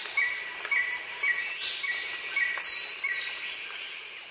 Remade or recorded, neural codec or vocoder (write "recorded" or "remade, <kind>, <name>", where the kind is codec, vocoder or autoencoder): recorded